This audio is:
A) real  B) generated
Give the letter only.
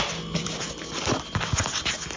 A